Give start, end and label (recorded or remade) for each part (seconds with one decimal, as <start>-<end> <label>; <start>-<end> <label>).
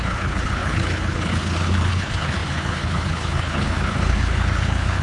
0.0-5.0 remade